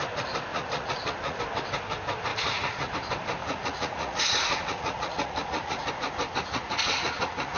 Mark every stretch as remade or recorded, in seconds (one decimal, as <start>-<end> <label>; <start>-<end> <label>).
0.0-0.5 recorded; 0.5-1.4 remade; 1.4-2.3 recorded; 2.3-2.9 remade; 2.9-3.4 recorded; 3.4-5.9 remade; 5.9-6.4 recorded; 6.4-7.6 remade